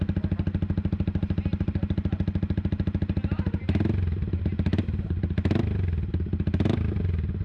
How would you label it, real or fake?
real